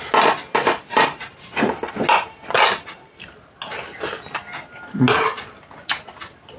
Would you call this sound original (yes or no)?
yes